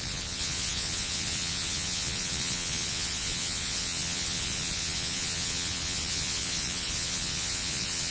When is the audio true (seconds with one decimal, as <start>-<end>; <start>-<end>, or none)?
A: none